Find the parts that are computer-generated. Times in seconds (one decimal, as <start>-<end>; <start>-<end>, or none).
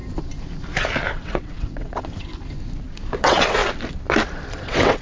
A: 1.1-2.3; 3.2-3.6; 4.5-5.0